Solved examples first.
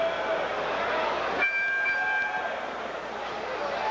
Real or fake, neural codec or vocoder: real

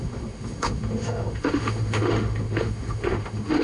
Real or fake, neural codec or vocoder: fake, autoencoder, DAC-VAE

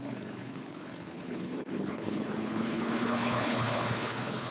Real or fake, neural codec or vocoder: fake, codec, HILCodec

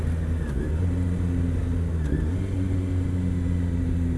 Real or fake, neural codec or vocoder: real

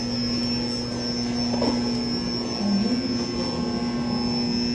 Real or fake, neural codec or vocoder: real